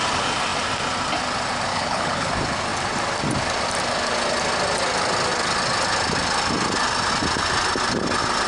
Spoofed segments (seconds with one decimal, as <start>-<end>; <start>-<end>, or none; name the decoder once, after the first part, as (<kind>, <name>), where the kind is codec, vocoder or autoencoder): 1.7-2.3 (codec, HILCodec)